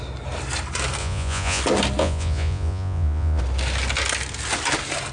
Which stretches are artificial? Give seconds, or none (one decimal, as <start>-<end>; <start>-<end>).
1.0-1.6; 2.0-3.4